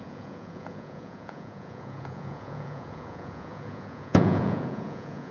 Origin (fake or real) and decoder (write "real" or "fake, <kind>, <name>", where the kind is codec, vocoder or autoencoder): fake, vocoder, Vocos